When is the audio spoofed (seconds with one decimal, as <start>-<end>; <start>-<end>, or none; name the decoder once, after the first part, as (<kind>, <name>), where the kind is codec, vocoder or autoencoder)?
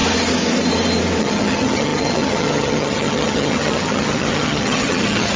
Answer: 1.2-5.4 (vocoder, HiFi-GAN)